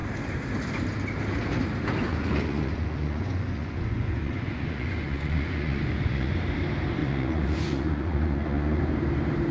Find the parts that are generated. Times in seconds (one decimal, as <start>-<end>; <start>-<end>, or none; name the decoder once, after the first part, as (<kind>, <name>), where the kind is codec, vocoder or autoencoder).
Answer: 2.1-6.3 (vocoder, Vocos); 7.0-8.8